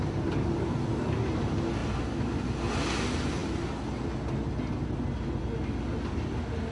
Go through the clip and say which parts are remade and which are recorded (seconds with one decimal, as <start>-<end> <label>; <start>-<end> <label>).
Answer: 0.0-6.7 recorded

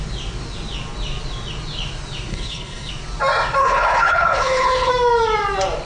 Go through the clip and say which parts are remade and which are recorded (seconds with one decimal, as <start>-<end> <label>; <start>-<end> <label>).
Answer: 0.0-2.3 recorded; 2.3-2.9 remade; 2.9-3.6 recorded; 3.6-4.9 remade; 4.9-5.9 recorded

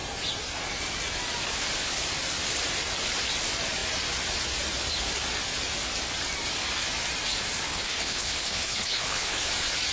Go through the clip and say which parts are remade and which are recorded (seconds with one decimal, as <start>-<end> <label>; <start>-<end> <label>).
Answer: 0.0-7.7 recorded; 7.7-9.5 remade; 9.5-9.9 recorded

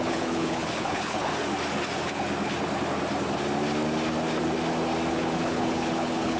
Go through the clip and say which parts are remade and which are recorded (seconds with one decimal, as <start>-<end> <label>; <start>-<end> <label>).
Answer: 0.0-1.3 remade; 1.3-5.1 recorded; 5.1-6.4 remade

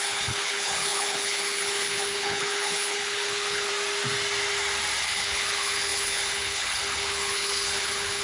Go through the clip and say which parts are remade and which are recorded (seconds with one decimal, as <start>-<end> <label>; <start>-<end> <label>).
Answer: 0.0-3.7 remade; 3.7-5.0 recorded; 5.0-8.2 remade

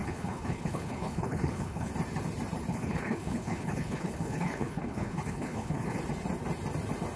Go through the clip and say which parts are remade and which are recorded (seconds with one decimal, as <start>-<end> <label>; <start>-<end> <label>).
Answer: 0.0-1.9 remade; 1.9-2.7 recorded; 2.7-6.0 remade; 6.0-7.2 recorded

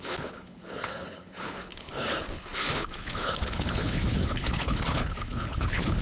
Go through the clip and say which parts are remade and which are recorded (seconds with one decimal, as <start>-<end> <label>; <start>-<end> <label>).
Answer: 0.0-6.0 remade